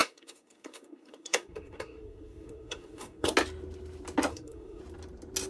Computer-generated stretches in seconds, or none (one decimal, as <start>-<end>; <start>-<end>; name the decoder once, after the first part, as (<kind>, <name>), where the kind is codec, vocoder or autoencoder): 0.0-3.3 (codec, SNAC); 4.3-4.8